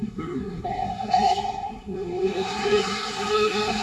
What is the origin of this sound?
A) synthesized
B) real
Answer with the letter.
A